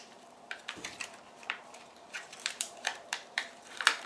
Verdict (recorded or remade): remade